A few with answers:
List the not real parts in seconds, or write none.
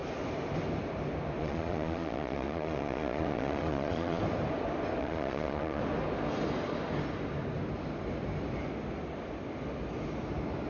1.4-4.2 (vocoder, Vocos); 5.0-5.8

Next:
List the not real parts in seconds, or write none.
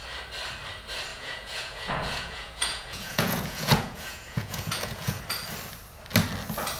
1.1-5.2 (vocoder, Vocos)